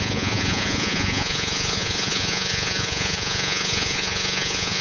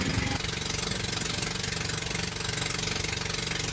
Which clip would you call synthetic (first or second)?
first